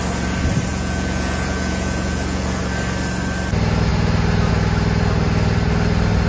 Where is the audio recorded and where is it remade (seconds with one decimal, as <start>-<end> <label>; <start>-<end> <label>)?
0.0-0.7 recorded; 0.7-2.6 remade; 2.6-6.3 recorded